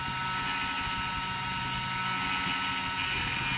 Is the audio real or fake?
real